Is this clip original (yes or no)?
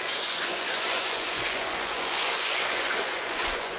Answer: no